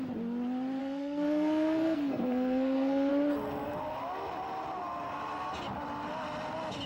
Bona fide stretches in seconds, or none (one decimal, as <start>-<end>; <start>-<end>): 0.0-0.8; 3.1-6.9